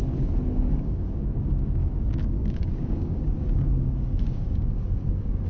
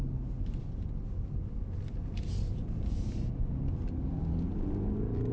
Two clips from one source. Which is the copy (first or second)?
first